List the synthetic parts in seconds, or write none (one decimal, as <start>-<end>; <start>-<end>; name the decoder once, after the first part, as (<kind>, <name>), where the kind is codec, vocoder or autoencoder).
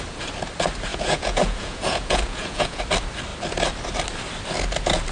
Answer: 0.9-2.8 (vocoder, Vocos)